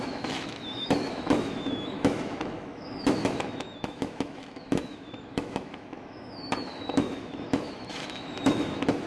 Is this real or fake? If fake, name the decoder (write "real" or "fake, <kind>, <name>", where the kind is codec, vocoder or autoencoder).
fake, autoencoder, DAC-VAE